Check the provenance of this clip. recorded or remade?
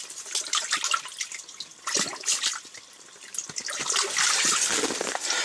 recorded